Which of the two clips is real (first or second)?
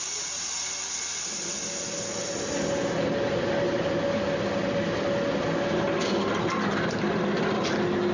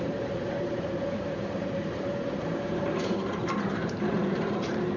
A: first